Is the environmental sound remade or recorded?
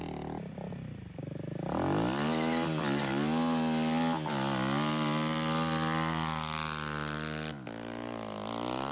recorded